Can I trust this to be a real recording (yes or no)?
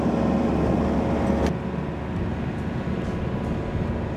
yes